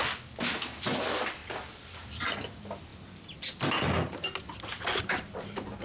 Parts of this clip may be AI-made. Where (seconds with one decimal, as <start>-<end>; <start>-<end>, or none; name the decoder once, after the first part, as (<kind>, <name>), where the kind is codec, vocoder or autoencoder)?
none